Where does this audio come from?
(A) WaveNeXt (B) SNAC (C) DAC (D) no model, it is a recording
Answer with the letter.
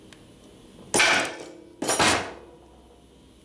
D